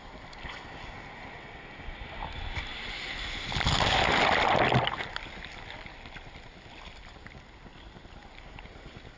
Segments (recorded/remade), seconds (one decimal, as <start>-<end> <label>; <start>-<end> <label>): 0.0-9.2 recorded